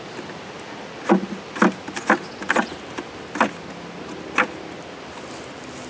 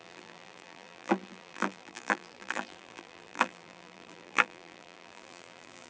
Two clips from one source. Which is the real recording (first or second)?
first